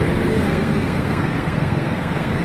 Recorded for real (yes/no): no